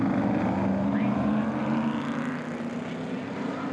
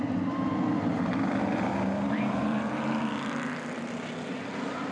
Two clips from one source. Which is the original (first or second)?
first